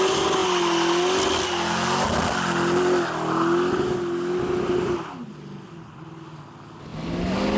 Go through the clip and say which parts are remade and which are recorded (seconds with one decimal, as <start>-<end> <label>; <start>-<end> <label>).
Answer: 0.0-7.6 recorded